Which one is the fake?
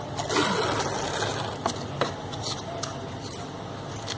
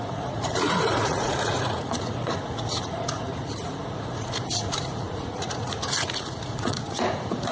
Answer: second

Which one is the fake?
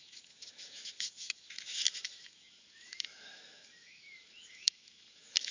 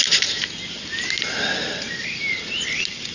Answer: first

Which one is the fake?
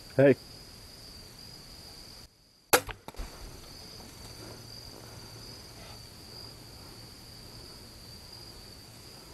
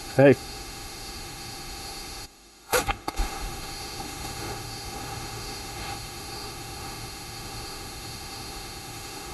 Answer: second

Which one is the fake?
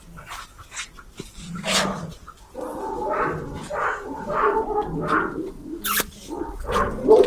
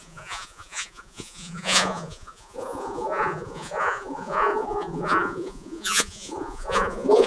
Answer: second